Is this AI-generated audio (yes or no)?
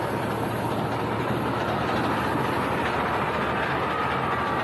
no